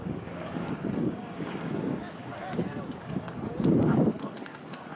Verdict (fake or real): fake